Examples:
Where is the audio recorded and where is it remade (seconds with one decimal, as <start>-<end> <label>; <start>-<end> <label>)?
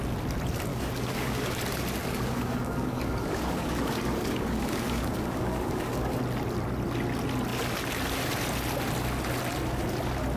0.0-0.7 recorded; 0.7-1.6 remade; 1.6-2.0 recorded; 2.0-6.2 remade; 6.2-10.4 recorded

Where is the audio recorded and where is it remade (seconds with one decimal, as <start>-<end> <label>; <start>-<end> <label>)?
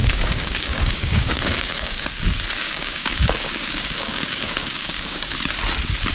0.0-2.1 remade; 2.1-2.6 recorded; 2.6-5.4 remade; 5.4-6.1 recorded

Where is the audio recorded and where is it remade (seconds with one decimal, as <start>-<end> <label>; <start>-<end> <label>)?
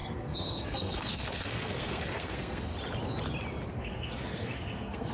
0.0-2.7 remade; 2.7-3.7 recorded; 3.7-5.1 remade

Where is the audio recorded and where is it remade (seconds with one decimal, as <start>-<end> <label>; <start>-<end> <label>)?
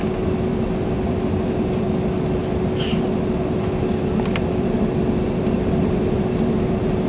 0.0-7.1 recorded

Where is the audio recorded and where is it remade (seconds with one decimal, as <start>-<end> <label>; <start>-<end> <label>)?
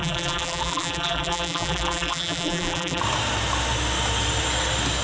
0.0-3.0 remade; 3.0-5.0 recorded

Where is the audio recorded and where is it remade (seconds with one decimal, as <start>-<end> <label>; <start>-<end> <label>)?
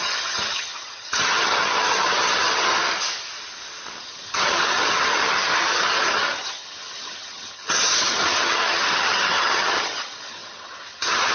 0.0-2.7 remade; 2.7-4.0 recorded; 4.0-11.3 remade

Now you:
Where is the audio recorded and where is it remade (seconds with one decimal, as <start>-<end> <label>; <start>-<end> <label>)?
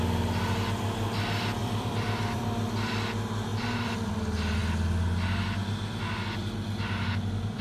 0.0-1.6 recorded; 1.6-2.9 remade; 2.9-3.5 recorded; 3.5-4.1 remade; 4.1-7.6 recorded